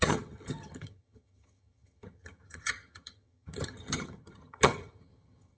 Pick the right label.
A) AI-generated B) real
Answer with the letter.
A